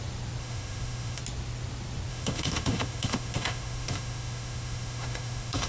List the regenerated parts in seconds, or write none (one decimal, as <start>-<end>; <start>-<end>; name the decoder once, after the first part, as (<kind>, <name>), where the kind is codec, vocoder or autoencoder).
0.4-1.2 (autoencoder, DAC-VAE); 2.1-5.7